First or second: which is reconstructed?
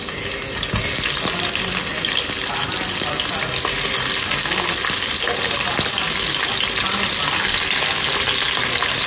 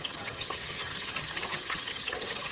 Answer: second